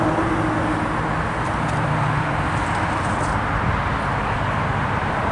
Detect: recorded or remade recorded